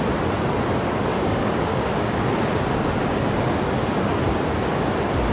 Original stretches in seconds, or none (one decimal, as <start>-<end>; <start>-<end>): 0.0-1.1; 2.2-5.3